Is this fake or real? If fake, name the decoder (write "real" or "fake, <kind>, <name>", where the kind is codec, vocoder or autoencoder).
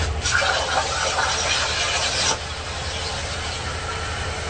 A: real